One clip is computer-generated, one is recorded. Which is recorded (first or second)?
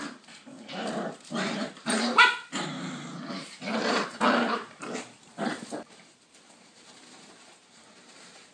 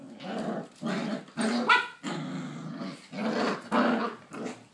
second